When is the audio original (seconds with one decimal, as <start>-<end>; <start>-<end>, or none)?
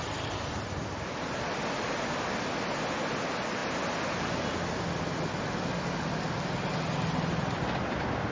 0.0-8.3